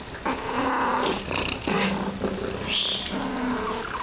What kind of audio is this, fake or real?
real